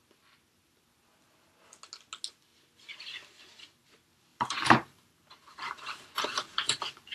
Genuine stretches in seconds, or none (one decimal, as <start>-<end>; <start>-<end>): 0.0-4.3